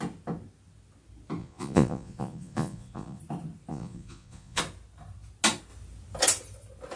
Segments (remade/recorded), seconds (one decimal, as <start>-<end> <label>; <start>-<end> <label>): 0.0-1.4 recorded; 1.4-3.2 remade; 3.2-3.7 recorded; 3.7-4.6 remade; 4.6-7.0 recorded